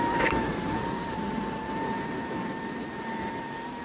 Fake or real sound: fake